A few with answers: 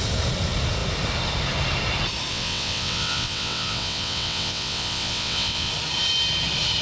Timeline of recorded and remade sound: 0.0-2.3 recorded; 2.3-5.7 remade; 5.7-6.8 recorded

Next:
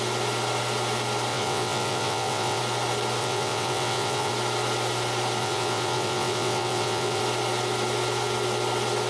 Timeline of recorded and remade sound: 0.0-1.3 recorded; 1.3-2.6 remade; 2.6-3.2 recorded; 3.2-4.3 remade; 4.3-5.4 recorded; 5.4-7.2 remade; 7.2-9.1 recorded

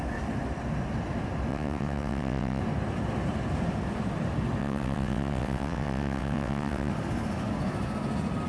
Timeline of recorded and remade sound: 0.0-1.5 recorded; 1.5-2.6 remade; 2.6-4.6 recorded; 4.6-6.9 remade; 6.9-8.5 recorded